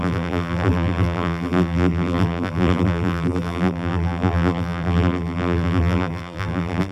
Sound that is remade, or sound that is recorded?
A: remade